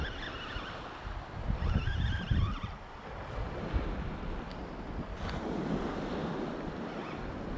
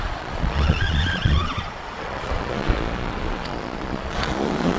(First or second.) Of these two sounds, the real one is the first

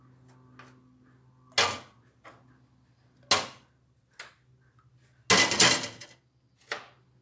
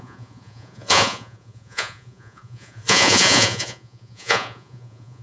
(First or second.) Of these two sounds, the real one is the first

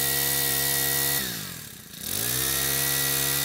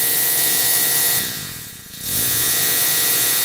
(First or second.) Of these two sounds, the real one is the first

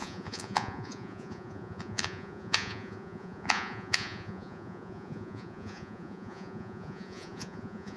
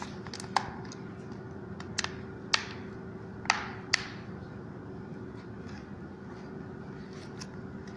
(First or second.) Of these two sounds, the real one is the second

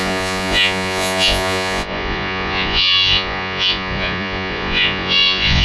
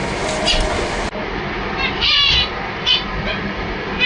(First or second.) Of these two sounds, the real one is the second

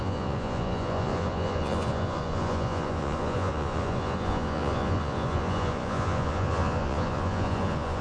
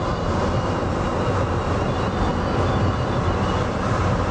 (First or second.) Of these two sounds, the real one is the second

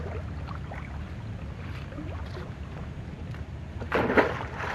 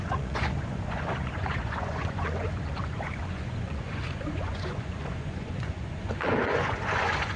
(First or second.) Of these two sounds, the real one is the first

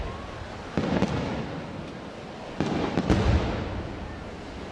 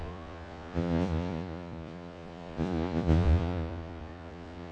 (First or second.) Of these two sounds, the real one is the first